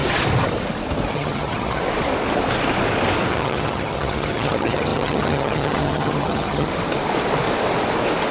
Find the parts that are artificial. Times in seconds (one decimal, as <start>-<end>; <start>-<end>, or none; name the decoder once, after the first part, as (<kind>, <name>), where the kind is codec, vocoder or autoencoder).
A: 1.1-1.8 (vocoder, HiFi-GAN); 3.3-6.7